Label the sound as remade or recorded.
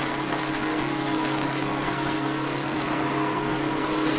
remade